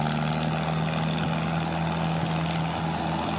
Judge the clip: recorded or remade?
recorded